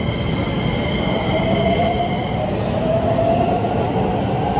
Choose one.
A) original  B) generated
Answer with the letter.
A